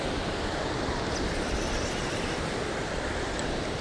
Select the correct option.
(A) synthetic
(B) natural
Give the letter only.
A